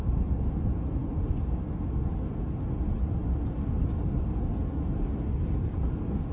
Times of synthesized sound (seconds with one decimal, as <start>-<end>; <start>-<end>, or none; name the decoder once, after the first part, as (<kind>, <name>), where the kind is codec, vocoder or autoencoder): none